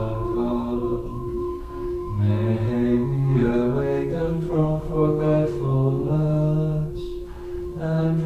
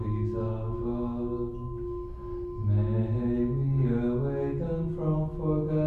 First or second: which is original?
second